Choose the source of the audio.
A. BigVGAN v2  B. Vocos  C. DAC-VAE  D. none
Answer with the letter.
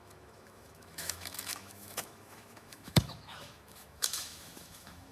C